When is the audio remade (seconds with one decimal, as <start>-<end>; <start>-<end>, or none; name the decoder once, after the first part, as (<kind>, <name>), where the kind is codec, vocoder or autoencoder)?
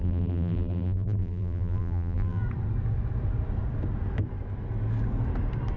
0.0-2.4 (vocoder, BigVGAN v2)